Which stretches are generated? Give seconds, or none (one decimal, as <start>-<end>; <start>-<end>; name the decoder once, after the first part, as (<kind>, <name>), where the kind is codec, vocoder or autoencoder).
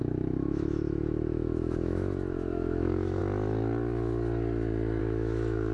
0.0-3.2 (autoencoder, DAC-VAE); 5.0-5.7